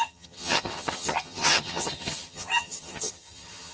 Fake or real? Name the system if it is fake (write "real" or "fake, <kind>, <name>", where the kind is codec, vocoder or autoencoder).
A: fake, vocoder, HiFi-GAN